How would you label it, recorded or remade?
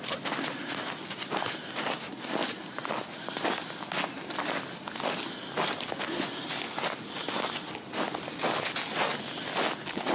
recorded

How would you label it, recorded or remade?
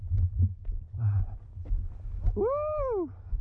recorded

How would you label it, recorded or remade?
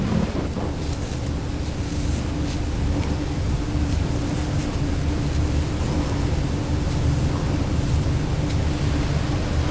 recorded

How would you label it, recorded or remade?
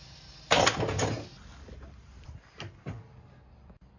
recorded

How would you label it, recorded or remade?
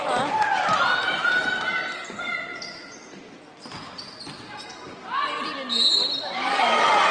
recorded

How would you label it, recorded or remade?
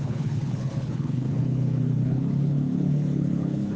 remade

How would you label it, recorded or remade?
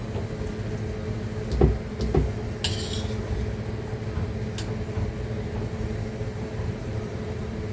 recorded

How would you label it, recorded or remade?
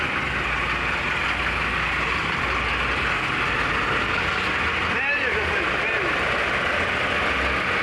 recorded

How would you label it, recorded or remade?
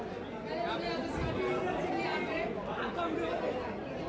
recorded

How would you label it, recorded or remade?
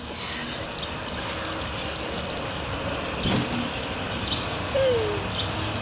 recorded